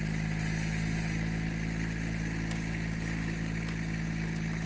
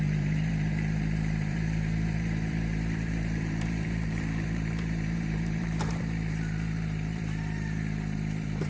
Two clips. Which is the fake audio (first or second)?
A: second